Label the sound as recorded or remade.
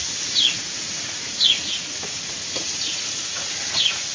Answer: remade